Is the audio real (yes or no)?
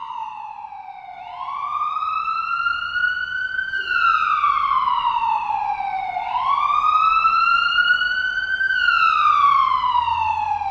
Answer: yes